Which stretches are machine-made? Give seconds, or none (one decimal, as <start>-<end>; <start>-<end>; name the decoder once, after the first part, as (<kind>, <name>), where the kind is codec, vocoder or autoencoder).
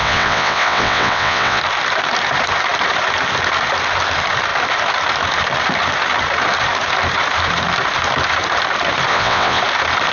0.0-1.6 (vocoder, WaveNeXt); 9.1-9.6